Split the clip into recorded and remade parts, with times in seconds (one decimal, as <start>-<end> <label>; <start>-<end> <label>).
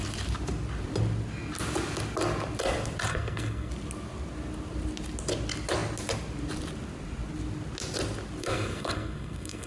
0.0-3.1 recorded; 3.1-3.7 remade; 3.7-8.4 recorded; 8.4-9.7 remade